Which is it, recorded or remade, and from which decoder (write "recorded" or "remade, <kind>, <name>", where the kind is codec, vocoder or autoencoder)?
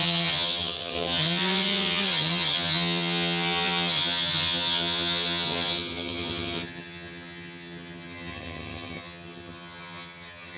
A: remade, vocoder, HiFi-GAN